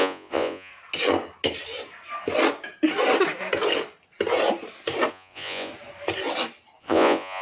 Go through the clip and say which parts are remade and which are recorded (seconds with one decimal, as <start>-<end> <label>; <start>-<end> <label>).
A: 0.0-0.7 remade; 0.7-5.1 recorded; 5.1-5.7 remade; 5.7-6.8 recorded; 6.8-7.4 remade